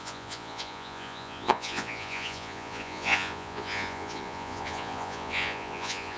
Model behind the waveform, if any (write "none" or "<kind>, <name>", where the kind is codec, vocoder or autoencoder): vocoder, Vocos